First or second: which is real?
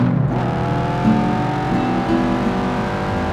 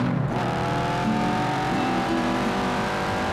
first